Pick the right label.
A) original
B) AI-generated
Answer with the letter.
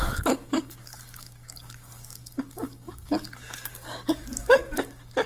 B